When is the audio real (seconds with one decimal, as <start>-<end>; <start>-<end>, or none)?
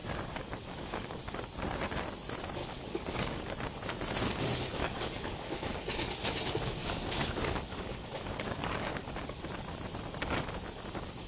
1.2-2.6; 3.5-4.8; 9.4-11.3